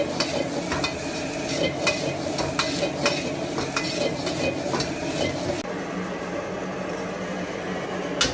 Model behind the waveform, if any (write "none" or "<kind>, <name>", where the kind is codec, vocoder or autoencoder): none